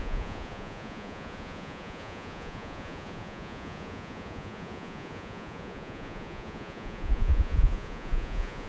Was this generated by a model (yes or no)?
yes